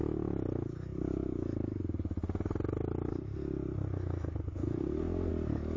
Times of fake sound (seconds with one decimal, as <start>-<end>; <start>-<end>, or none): 4.6-5.3